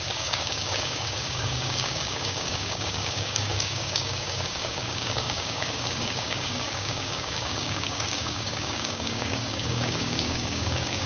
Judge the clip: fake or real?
fake